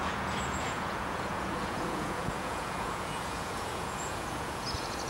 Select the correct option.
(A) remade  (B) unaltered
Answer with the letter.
A